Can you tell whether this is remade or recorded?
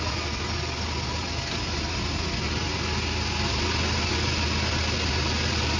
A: recorded